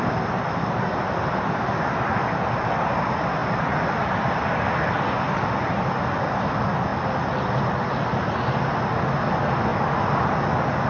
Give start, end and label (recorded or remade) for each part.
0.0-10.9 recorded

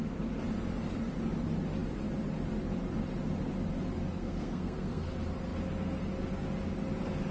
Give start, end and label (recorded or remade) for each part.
0.0-4.1 recorded; 4.1-5.1 remade; 5.1-7.3 recorded